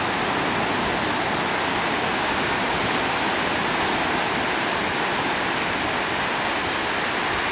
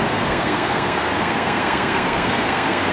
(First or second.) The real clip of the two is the first